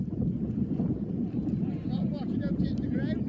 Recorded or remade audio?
recorded